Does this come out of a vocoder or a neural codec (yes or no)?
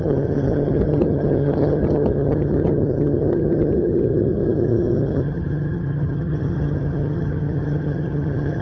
yes